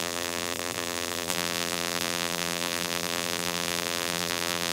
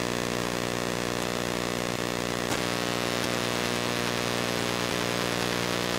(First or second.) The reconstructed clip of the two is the first